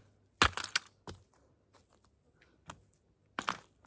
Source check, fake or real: real